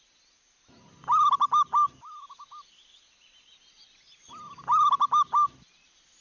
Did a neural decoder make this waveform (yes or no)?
no